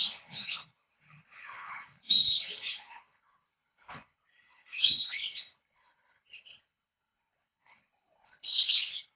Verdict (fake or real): fake